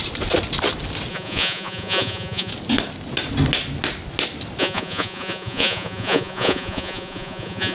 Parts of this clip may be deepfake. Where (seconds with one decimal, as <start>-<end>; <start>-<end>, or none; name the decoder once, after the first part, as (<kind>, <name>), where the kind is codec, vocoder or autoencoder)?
1.1-2.5 (vocoder, Vocos); 4.6-7.7